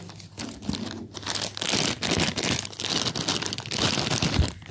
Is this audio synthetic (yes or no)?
no